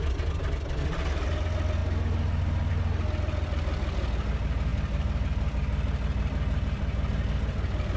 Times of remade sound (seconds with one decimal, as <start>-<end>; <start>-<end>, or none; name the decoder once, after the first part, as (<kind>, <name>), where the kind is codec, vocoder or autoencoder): none